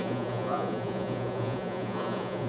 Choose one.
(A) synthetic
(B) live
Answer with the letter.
A